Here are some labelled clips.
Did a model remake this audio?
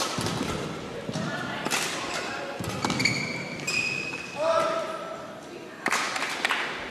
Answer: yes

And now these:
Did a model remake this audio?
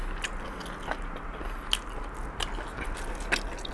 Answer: no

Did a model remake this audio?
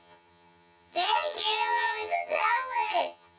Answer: yes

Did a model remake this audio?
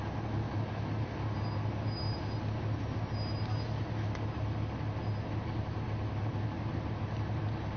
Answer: no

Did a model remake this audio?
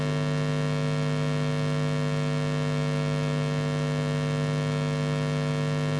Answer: no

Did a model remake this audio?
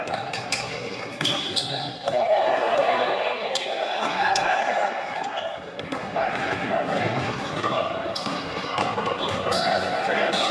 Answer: yes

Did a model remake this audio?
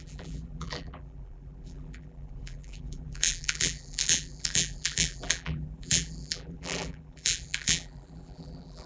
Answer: yes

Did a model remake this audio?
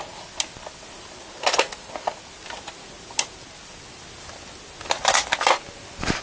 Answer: no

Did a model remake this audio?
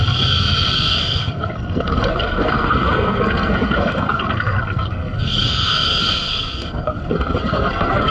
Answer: yes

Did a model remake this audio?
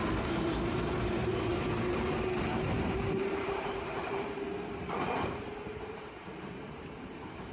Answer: yes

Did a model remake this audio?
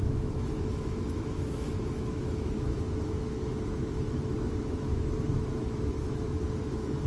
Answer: yes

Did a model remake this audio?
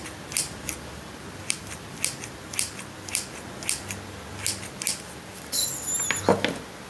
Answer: no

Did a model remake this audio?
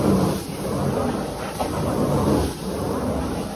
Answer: yes